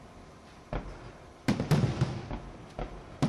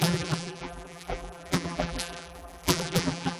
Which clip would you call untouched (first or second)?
first